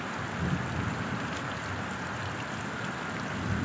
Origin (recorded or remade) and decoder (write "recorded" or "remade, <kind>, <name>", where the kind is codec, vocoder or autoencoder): recorded